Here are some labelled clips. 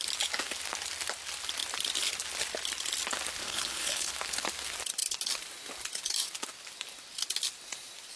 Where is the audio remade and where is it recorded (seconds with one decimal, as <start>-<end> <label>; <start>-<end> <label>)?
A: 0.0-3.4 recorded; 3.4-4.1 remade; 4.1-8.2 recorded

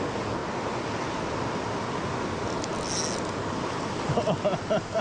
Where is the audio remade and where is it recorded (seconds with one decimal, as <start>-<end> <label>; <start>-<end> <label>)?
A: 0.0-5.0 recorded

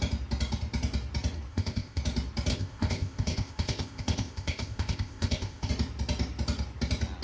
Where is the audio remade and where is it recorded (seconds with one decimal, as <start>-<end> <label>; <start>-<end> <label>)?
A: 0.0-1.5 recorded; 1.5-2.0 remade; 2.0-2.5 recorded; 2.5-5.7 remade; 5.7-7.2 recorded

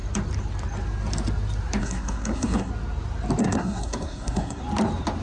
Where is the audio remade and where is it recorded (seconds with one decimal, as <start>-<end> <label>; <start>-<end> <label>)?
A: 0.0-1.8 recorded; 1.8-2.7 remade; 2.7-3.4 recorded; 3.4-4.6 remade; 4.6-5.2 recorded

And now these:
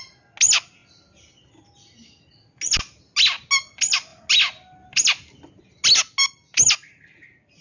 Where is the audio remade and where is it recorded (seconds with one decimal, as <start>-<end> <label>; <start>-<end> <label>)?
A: 0.0-7.6 recorded

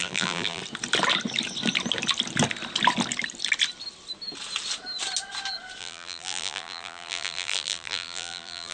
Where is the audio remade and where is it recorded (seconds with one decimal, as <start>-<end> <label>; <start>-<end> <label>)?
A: 0.0-0.6 remade; 0.6-5.8 recorded; 5.8-8.7 remade